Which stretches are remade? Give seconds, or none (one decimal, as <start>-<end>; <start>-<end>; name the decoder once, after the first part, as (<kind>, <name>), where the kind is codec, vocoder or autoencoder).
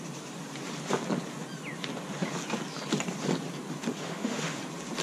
3.9-4.6 (autoencoder, DAC-VAE)